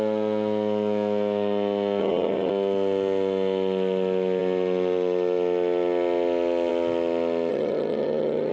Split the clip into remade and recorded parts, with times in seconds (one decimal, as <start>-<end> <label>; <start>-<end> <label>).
0.0-2.0 recorded; 2.0-2.5 remade; 2.5-7.5 recorded; 7.5-8.5 remade